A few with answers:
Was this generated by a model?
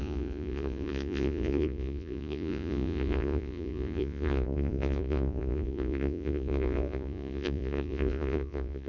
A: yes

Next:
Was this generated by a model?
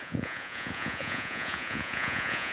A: yes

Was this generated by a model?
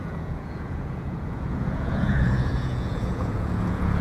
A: yes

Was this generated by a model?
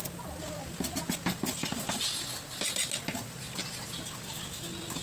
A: no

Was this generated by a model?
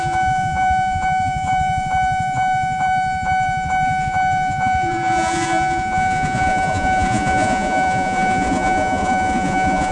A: yes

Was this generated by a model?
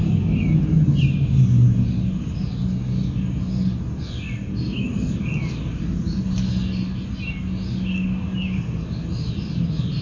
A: no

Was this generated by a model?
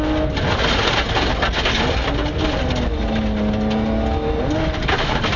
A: no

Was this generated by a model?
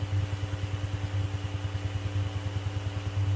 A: no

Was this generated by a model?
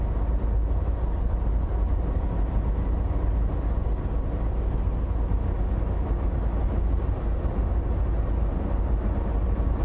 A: no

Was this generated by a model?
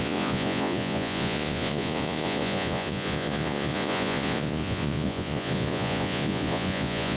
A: yes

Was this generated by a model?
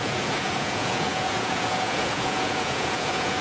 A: yes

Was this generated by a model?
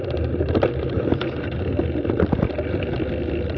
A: no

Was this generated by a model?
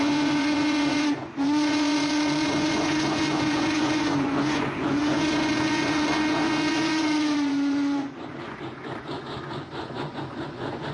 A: yes